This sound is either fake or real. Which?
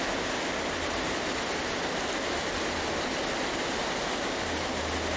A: real